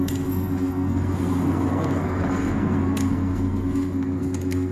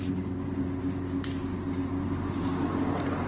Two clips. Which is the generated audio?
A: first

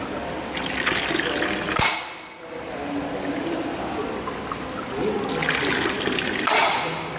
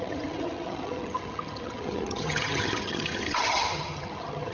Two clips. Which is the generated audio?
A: second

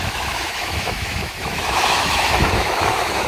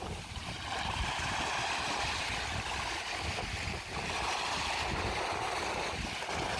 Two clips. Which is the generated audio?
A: first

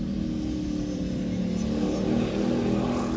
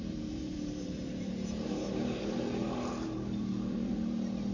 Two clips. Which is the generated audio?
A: second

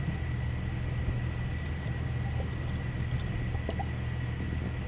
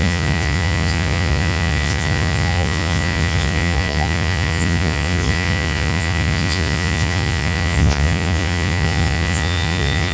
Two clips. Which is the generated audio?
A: second